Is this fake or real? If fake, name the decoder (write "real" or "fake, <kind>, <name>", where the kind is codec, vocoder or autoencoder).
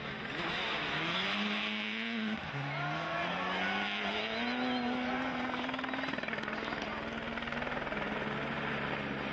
real